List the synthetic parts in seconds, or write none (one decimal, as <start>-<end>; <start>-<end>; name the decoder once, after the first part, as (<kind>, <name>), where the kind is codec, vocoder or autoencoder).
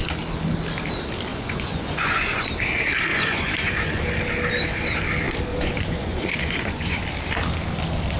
1.3-2.5 (vocoder, Vocos); 3.1-4.0; 5.5-7.0